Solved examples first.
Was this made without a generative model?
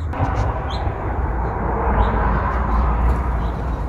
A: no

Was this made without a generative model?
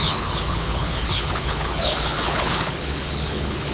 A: no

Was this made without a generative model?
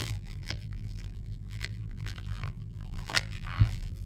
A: no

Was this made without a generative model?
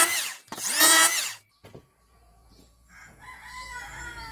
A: no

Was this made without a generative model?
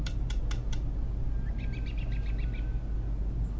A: yes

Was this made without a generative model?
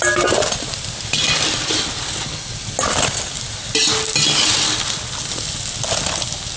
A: yes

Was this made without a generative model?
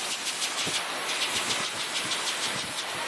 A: yes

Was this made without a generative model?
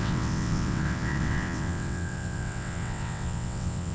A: no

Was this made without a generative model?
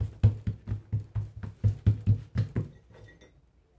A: yes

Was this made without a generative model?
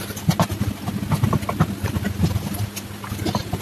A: yes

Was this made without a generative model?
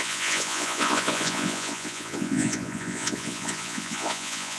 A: no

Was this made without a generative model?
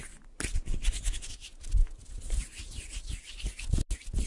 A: yes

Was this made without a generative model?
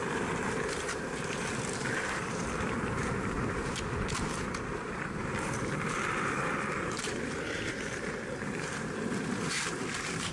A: no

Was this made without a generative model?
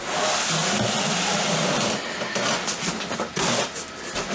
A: yes